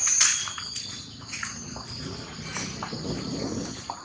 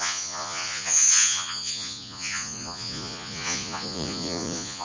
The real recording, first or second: first